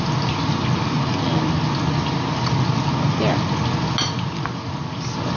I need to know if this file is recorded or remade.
recorded